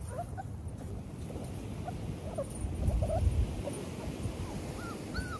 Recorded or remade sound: recorded